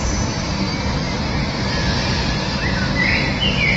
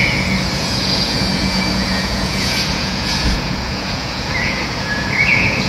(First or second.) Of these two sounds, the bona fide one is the first